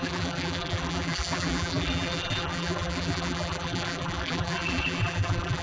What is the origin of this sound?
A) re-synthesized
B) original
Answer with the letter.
A